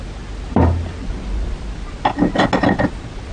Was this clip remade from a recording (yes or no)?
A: no